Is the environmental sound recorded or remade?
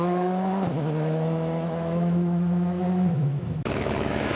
remade